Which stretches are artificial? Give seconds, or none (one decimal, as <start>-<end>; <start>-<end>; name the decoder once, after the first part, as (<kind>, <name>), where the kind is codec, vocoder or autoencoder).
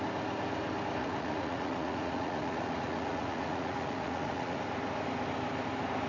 1.0-4.6 (vocoder, Vocos)